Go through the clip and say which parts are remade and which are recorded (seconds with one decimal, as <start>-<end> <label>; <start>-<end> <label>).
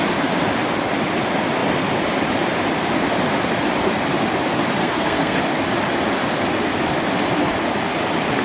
0.0-4.8 recorded; 4.8-5.4 remade; 5.4-8.4 recorded